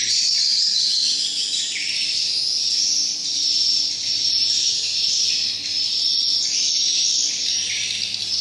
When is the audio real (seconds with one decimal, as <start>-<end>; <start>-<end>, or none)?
0.0-2.0; 2.5-3.2; 5.1-8.4